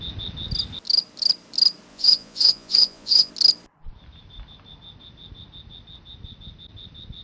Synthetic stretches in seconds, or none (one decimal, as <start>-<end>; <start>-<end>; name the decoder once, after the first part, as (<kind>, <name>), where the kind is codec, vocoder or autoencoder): 1.9-3.3 (vocoder, Vocos)